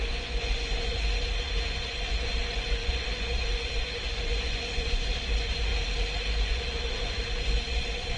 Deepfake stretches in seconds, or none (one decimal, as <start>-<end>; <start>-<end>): 0.0-1.1; 1.7-5.7; 6.3-8.2

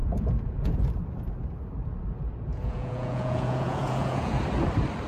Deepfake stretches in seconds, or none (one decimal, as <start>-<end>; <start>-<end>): 0.0-0.8; 2.5-4.4